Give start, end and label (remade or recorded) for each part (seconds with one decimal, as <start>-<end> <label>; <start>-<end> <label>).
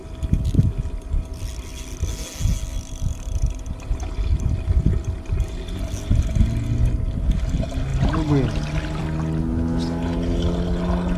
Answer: 0.0-11.2 recorded